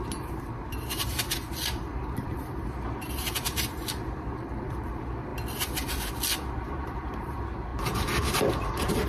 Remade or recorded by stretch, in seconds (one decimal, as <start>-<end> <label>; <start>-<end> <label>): 0.0-5.3 remade; 5.3-6.5 recorded; 6.5-9.1 remade